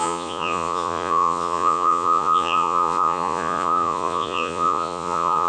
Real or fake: fake